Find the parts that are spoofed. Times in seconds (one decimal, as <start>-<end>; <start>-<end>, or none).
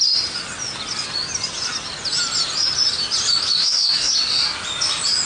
3.6-4.1